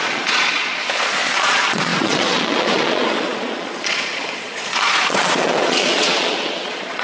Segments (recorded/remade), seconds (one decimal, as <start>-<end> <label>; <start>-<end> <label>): 0.0-7.0 remade